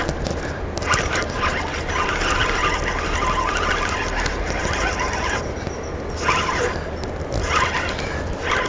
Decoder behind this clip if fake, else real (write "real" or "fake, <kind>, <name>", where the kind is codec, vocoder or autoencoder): real